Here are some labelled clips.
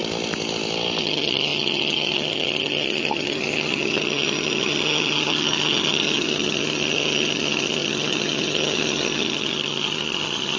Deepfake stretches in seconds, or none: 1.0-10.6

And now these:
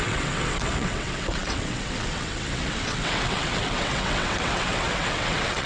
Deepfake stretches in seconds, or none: 0.0-5.7

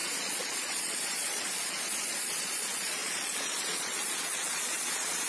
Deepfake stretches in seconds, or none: 0.0-5.3

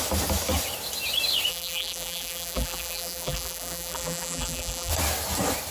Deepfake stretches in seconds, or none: 1.5-4.9

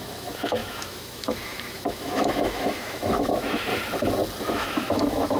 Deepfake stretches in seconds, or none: 0.0-3.7; 4.5-5.4

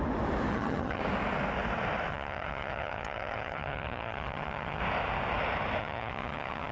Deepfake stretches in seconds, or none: 0.5-1.0; 2.1-4.8; 5.8-6.7

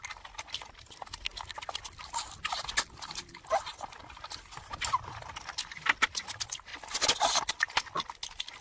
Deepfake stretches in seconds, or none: none

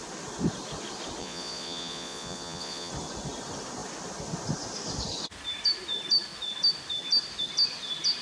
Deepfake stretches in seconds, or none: 1.2-2.9